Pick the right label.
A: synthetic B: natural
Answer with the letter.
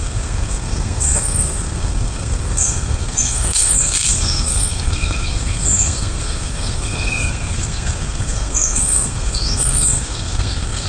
A